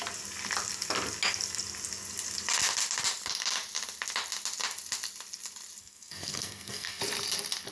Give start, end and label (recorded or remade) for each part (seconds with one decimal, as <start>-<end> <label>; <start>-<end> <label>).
0.0-5.8 recorded; 5.8-7.0 remade; 7.0-7.7 recorded